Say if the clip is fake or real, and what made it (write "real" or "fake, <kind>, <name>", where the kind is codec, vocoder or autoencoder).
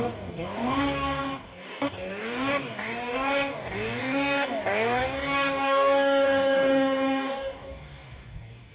fake, codec, DAC